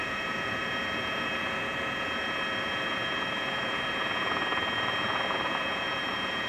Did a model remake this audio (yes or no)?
yes